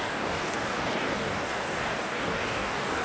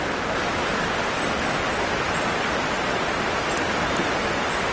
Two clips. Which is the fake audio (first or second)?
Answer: first